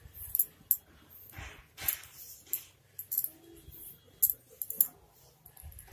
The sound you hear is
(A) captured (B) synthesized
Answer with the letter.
A